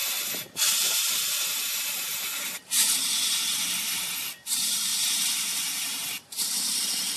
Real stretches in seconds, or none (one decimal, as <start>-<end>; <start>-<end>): none